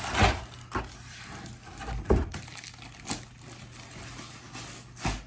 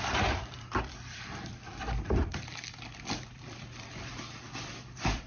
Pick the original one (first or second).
first